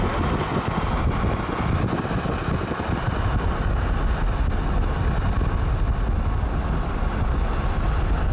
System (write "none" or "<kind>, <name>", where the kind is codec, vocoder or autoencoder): none